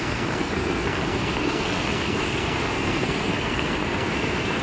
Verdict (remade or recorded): remade